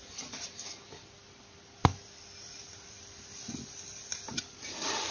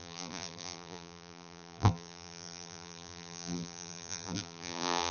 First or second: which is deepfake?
second